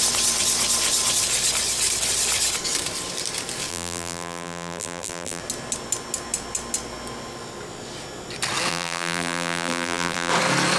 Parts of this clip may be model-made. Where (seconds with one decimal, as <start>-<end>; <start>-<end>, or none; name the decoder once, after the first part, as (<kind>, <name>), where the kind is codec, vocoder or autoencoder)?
3.7-5.4 (vocoder, BigVGAN v2); 8.7-10.3

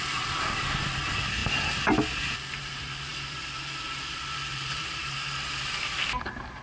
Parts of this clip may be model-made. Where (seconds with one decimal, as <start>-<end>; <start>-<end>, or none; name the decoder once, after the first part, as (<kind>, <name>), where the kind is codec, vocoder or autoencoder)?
0.0-1.4 (vocoder, BigVGAN v2); 2.6-5.0; 5.6-6.6

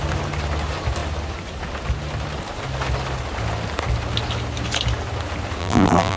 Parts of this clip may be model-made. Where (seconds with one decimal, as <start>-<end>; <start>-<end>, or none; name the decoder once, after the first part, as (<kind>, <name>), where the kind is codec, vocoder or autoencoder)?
5.6-6.2 (vocoder, BigVGAN v2)

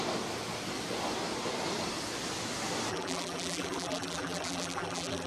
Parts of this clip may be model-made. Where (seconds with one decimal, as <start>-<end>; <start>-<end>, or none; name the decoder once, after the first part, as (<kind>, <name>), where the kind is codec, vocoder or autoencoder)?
2.9-5.3 (vocoder, BigVGAN v2)